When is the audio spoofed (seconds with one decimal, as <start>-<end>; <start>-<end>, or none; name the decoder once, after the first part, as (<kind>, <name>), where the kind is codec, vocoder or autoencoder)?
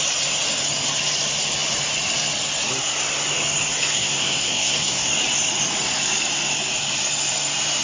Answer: 3.9-5.1 (codec, SNAC)